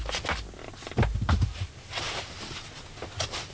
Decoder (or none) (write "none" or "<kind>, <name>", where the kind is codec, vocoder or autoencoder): none